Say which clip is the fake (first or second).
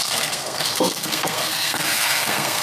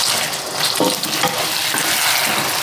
first